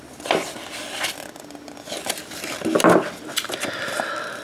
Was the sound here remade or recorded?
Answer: recorded